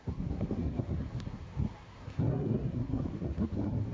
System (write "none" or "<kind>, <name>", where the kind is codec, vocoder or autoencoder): codec, SNAC